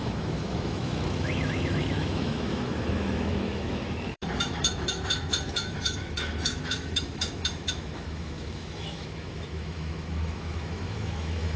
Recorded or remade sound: remade